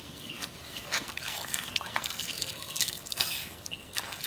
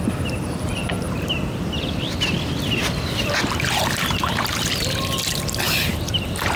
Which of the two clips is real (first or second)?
second